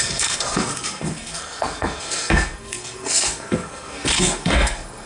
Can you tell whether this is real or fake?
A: fake